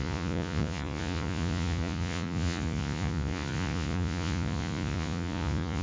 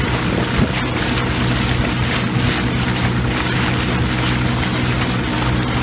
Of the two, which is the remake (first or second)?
first